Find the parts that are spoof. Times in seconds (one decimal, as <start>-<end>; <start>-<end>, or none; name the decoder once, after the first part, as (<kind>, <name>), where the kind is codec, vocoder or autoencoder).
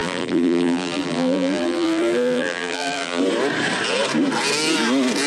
0.0-3.2 (vocoder, BigVGAN v2)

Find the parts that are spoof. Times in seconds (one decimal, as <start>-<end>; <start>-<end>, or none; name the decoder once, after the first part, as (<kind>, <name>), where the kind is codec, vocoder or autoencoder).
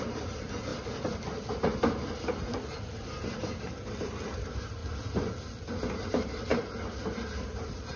0.0-0.7 (vocoder, BigVGAN v2); 2.1-4.8; 6.1-6.5; 7.0-8.0